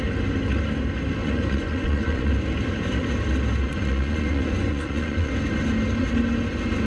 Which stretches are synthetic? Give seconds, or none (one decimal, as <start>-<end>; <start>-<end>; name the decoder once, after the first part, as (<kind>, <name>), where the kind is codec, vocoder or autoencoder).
1.2-2.3 (vocoder, Vocos); 3.7-5.3